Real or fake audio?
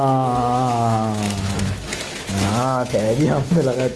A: fake